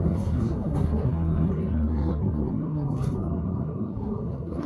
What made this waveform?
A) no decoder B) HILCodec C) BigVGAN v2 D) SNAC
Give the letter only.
D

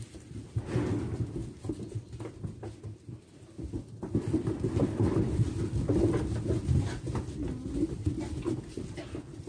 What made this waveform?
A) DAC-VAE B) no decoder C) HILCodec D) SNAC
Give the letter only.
B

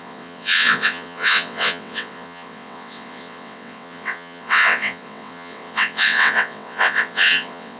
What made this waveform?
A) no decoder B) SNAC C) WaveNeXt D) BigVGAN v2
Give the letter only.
C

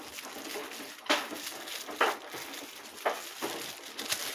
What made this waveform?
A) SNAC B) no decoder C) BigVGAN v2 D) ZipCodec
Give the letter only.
B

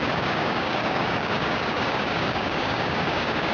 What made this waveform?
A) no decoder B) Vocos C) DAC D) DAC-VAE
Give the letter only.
C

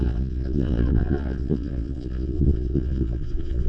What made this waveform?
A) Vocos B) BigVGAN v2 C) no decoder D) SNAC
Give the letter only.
A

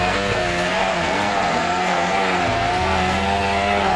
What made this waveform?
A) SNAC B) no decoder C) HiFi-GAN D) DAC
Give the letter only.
A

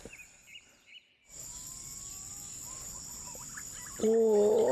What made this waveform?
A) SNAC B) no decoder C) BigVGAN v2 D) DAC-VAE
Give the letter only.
B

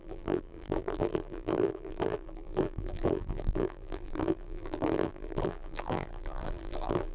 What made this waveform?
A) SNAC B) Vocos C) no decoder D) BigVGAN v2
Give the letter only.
D